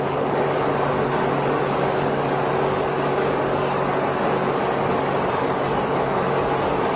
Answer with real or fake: fake